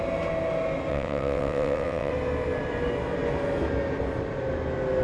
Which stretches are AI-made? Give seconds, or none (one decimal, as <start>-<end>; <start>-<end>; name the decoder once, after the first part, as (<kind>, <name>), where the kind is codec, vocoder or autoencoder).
0.9-2.1 (vocoder, WaveNeXt)